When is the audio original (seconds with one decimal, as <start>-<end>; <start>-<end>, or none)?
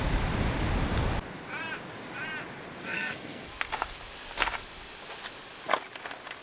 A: 0.0-2.8; 3.5-6.4